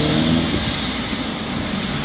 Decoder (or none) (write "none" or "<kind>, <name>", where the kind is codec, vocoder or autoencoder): none